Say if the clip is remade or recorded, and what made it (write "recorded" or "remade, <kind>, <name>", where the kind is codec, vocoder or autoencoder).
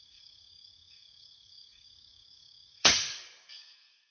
remade, codec, DAC